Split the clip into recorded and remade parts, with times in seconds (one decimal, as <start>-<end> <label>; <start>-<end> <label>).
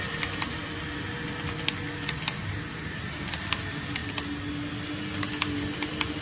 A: 0.0-6.2 recorded